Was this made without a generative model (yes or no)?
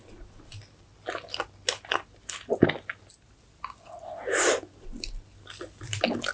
yes